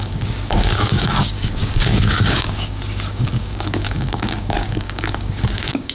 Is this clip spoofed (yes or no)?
yes